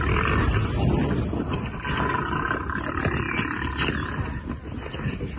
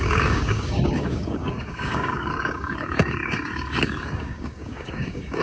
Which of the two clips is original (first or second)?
first